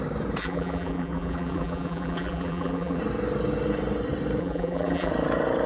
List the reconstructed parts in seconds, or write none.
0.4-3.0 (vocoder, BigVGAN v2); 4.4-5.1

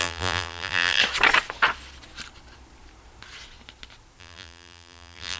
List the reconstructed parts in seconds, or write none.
0.0-1.0 (vocoder, BigVGAN v2); 4.2-5.4

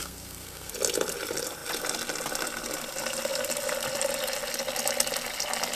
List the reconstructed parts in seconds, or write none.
0.0-0.7 (codec, SNAC)

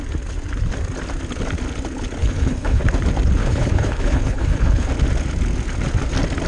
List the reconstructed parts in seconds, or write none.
2.2-2.8 (codec, HILCodec); 3.4-4.9

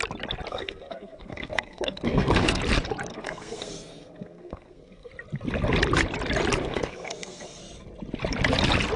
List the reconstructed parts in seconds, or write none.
0.5-2.6 (codec, SNAC); 3.1-5.1; 6.6-7.6

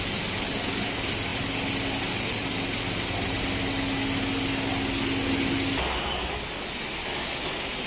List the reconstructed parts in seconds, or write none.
none

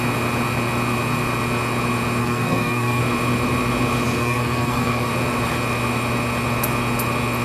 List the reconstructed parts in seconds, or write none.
2.2-3.0 (codec, SNAC); 4.2-5.1